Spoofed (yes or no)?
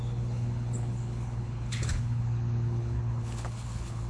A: yes